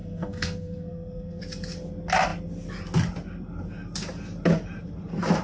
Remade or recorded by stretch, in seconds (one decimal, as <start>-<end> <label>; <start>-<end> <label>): 0.0-1.4 remade; 1.4-5.4 recorded